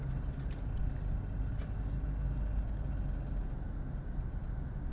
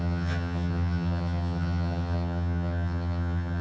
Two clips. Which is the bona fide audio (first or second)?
first